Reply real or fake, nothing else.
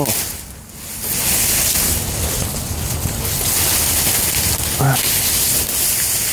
real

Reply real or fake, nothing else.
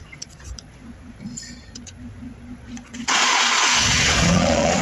fake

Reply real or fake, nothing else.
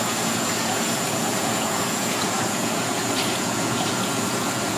fake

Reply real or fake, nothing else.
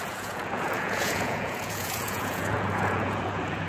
fake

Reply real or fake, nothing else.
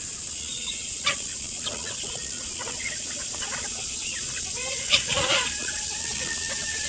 fake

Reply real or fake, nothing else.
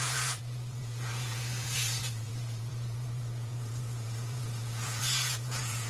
fake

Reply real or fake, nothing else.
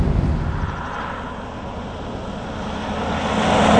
real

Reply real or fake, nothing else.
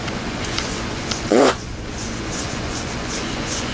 fake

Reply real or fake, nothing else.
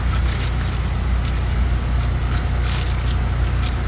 real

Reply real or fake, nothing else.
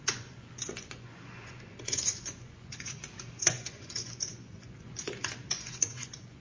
fake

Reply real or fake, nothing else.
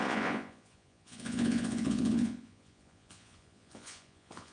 fake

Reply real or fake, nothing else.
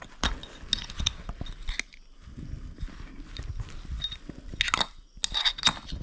real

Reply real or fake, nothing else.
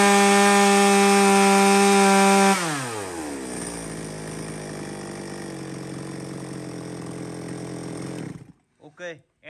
real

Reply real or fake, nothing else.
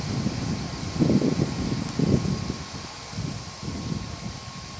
real